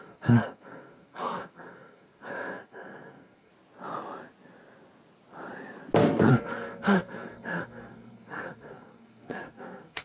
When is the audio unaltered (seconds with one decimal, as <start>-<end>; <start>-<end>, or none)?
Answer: 3.5-6.3